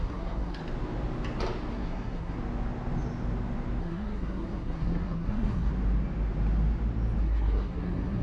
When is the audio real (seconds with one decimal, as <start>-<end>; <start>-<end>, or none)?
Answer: 0.6-1.7; 2.4-3.8; 5.7-7.2